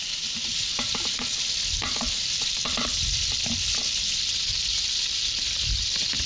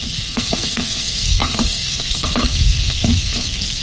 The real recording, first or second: first